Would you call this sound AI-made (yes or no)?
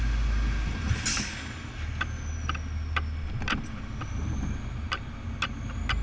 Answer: no